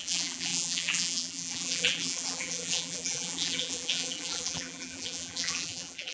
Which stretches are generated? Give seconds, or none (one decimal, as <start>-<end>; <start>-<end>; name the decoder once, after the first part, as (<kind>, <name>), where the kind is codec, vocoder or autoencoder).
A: 0.0-6.1 (vocoder, BigVGAN v2)